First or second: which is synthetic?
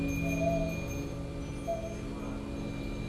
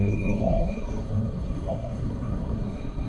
second